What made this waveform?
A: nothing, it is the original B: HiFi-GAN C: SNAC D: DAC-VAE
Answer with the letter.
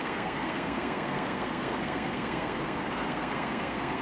C